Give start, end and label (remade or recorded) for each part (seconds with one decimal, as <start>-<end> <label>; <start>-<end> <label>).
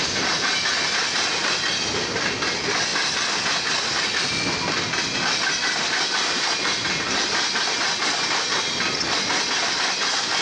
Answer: 0.0-10.4 recorded